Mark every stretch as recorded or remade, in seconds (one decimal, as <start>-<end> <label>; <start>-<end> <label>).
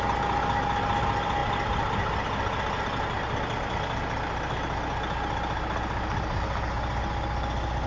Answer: 0.0-7.9 recorded